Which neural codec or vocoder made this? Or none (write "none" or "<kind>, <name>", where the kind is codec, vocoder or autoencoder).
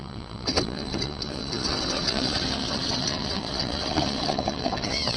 vocoder, WaveNeXt